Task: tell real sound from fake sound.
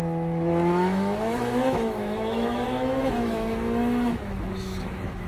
fake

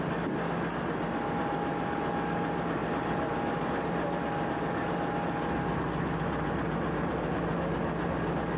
real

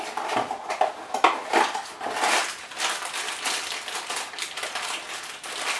real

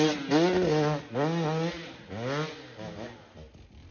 real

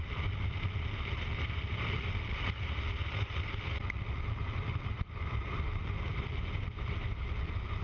fake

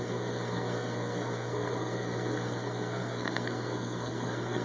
fake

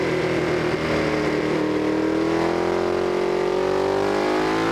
real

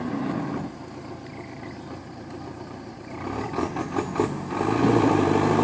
fake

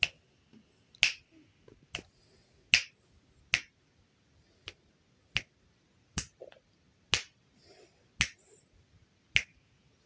real